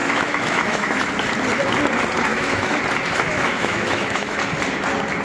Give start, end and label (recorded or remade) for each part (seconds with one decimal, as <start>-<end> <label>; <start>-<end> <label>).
0.0-1.1 remade; 1.1-2.3 recorded; 2.3-2.8 remade; 2.8-3.3 recorded; 3.3-4.4 remade; 4.4-5.2 recorded